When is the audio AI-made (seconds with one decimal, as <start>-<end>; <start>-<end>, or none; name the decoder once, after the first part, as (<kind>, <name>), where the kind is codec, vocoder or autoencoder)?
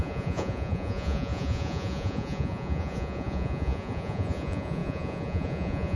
0.0-6.0 (vocoder, Vocos)